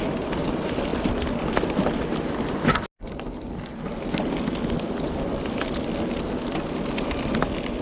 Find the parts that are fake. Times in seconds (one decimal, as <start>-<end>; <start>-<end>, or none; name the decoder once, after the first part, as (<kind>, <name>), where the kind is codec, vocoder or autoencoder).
none